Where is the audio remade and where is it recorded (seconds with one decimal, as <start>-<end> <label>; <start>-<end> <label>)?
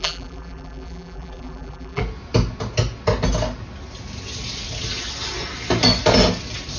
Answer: 0.0-2.0 remade; 2.0-6.8 recorded